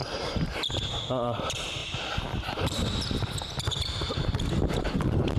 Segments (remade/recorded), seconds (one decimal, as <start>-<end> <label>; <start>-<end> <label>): 0.0-5.4 remade